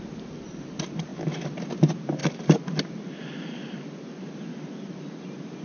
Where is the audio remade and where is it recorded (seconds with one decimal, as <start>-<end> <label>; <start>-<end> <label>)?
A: 0.0-5.6 recorded